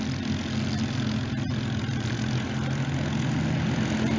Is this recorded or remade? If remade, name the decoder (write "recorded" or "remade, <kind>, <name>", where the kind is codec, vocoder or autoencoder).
recorded